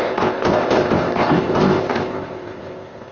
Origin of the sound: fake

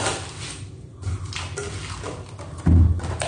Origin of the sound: real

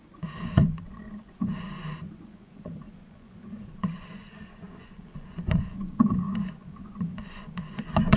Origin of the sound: fake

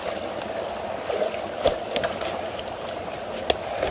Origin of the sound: real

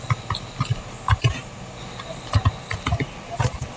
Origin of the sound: real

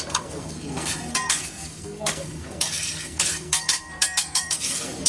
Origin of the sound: fake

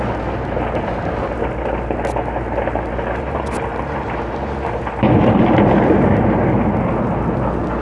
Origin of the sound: real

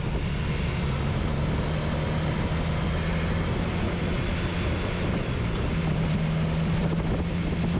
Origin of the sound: real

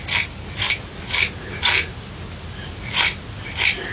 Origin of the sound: real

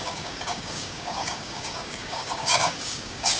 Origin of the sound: fake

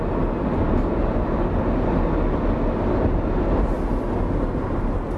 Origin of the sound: real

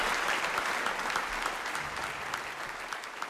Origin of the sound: real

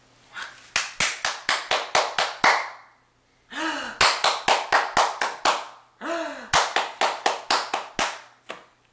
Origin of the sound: real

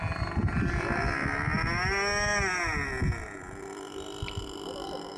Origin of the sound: real